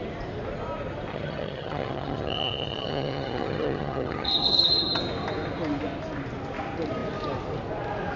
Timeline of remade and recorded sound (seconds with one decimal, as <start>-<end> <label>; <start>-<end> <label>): 0.0-1.1 recorded; 1.1-5.0 remade; 5.0-8.2 recorded

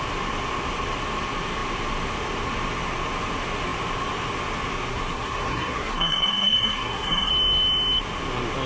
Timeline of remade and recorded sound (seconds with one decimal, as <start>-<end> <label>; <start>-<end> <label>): 0.0-4.9 recorded; 4.9-7.3 remade; 7.3-8.7 recorded

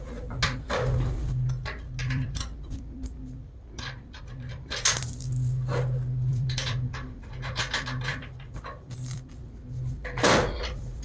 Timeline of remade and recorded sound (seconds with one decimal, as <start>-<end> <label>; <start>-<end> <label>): 0.0-2.0 recorded; 2.0-4.2 remade; 4.2-6.3 recorded; 6.3-7.3 remade; 7.3-8.1 recorded; 8.1-9.4 remade; 9.4-11.0 recorded

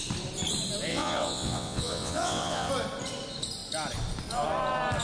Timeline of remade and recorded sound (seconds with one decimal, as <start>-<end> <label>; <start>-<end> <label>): 0.0-0.9 recorded; 0.9-2.7 remade; 2.7-5.0 recorded

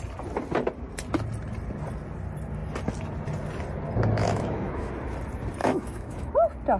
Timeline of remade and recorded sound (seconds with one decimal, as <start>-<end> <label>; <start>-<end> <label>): 0.0-4.2 recorded; 4.2-4.9 remade; 4.9-5.6 recorded; 5.6-6.3 remade; 6.3-6.8 recorded